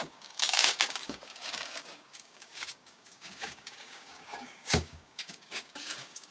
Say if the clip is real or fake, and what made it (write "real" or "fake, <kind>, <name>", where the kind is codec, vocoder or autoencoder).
fake, codec, DAC